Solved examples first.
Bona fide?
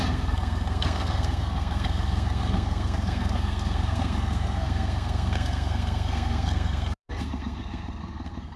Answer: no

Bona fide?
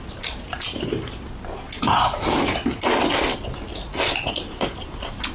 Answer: yes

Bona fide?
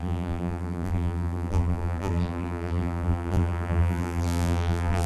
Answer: no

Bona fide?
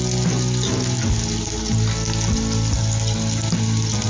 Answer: yes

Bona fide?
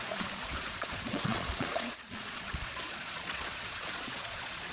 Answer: no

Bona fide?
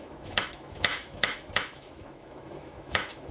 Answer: no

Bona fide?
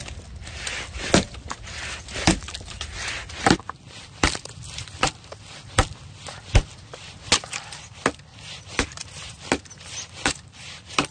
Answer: yes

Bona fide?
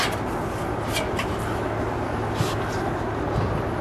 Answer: yes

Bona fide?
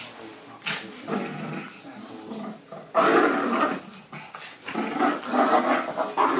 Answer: yes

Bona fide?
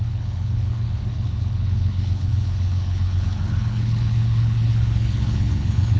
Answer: no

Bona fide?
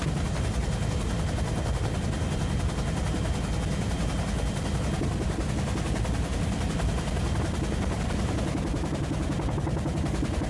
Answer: yes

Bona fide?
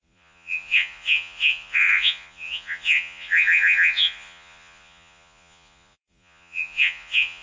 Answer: no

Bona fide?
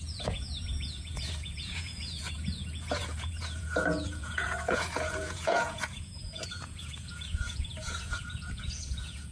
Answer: no